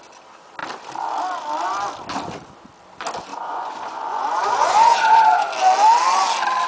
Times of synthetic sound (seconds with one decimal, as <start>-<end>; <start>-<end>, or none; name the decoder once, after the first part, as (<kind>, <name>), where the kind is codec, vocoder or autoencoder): 3.3-5.5 (vocoder, Vocos)